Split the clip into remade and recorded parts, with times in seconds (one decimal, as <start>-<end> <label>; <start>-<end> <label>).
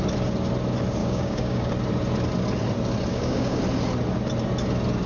0.0-1.0 recorded; 1.0-1.7 remade; 1.7-3.1 recorded; 3.1-3.6 remade; 3.6-5.1 recorded